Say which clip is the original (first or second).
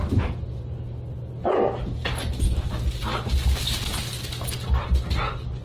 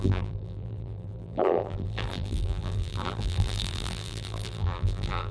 first